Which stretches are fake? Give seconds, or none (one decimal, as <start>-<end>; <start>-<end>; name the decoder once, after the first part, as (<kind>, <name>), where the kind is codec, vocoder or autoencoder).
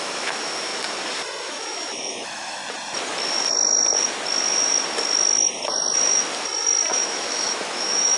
0.0-0.7 (autoencoder, DAC-VAE); 1.4-2.6; 6.9-8.2